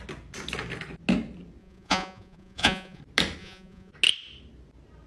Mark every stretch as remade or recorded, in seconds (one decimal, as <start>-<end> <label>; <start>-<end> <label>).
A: 0.0-1.6 recorded; 1.6-3.0 remade; 3.0-3.4 recorded; 3.4-3.9 remade; 3.9-5.1 recorded